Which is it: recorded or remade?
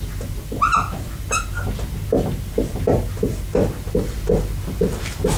recorded